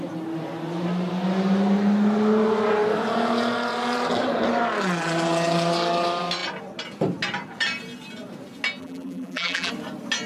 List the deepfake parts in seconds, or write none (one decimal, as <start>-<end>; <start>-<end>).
8.8-9.7